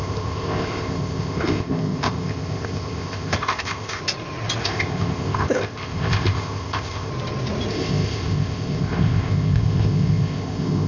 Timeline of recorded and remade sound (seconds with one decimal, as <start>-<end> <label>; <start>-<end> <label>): 0.0-4.0 remade; 4.0-4.6 recorded; 4.6-7.1 remade; 7.1-7.7 recorded; 7.7-10.9 remade